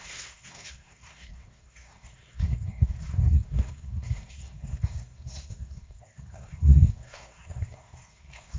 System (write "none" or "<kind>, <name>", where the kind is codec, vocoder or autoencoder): codec, SNAC